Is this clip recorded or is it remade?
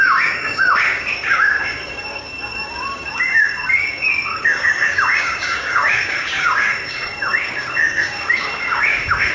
remade